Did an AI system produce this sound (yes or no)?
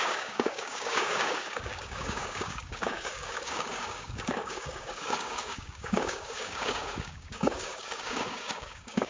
yes